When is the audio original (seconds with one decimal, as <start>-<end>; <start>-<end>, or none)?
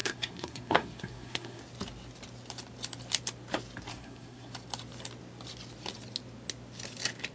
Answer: 1.6-3.9; 4.5-7.3